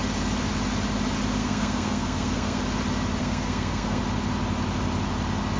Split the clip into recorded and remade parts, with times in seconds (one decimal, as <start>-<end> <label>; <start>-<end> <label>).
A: 0.0-1.4 recorded; 1.4-2.6 remade; 2.6-3.2 recorded; 3.2-4.0 remade; 4.0-5.6 recorded